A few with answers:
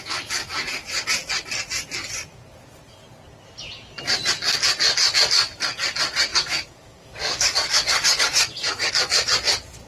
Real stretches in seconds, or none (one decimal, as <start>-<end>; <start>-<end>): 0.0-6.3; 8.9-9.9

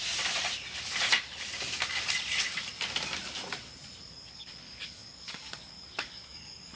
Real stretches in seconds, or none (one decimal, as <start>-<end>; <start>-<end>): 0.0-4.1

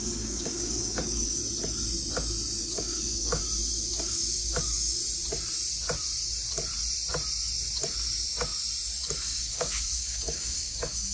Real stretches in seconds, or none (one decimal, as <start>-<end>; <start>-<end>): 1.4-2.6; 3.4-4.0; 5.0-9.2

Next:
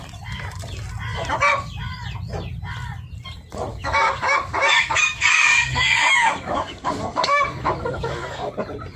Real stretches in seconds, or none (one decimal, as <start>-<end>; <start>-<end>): 0.0-3.7; 8.5-9.0

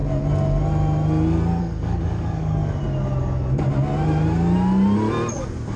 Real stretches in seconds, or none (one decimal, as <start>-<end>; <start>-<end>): 0.0-1.6; 2.6-5.8

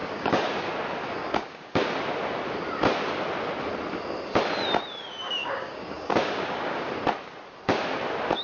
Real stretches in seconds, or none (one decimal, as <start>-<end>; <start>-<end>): 0.7-1.2; 1.9-5.4; 6.9-8.4